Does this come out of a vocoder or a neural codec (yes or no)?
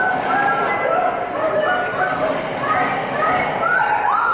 no